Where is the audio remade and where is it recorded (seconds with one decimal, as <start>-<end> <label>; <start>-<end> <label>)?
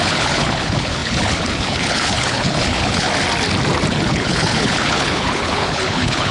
0.0-3.1 remade; 3.1-3.9 recorded; 3.9-6.3 remade